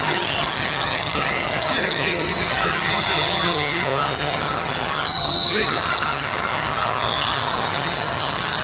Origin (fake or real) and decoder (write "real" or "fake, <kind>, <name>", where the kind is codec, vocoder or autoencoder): fake, vocoder, HiFi-GAN